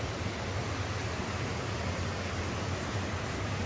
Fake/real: real